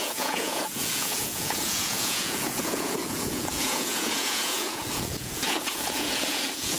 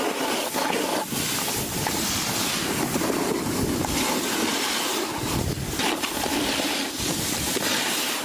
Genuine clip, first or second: second